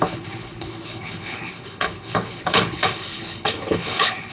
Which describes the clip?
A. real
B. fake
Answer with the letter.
B